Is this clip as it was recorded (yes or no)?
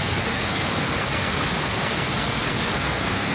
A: no